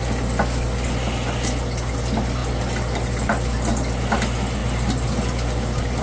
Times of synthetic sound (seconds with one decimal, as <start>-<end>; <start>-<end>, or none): none